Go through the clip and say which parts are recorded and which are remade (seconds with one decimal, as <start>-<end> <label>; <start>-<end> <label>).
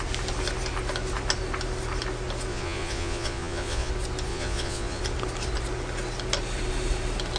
0.0-2.5 recorded; 2.5-3.9 remade; 3.9-4.3 recorded; 4.3-5.0 remade; 5.0-7.4 recorded